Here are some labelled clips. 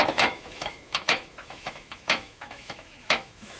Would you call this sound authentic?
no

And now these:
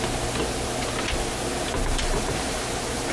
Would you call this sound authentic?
yes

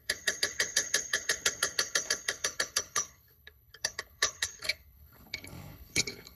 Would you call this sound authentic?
no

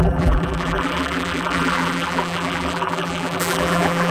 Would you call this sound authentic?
no